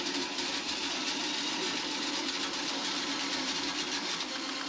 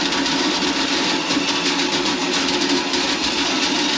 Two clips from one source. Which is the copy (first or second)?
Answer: first